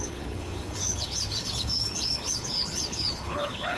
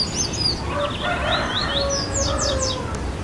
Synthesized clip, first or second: first